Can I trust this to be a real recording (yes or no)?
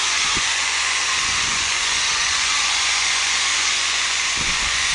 no